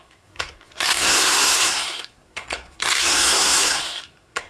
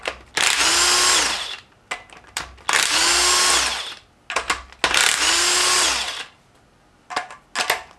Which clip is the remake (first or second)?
first